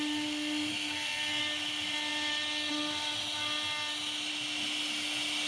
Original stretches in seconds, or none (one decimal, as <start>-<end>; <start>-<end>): 0.0-0.7; 1.4-5.5